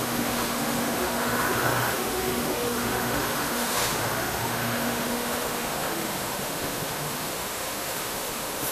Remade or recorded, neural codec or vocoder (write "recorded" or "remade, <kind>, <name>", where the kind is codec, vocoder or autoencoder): remade, autoencoder, DAC-VAE